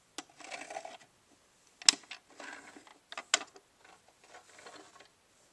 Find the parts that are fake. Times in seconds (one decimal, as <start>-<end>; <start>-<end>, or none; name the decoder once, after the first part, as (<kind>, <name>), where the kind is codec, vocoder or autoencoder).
none